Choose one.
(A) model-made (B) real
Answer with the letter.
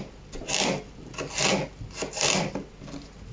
B